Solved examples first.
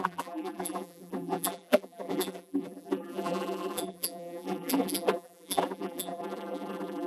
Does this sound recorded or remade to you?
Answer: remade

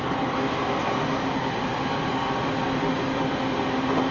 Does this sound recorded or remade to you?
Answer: recorded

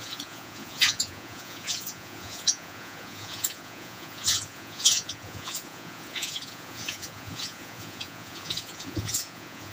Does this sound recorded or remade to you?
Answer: remade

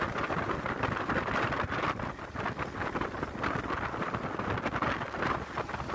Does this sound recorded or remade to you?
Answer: recorded